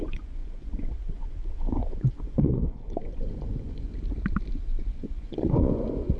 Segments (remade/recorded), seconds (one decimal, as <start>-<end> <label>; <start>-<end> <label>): 0.0-3.9 remade; 3.9-4.5 recorded; 4.5-6.2 remade